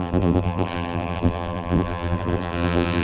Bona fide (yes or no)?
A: no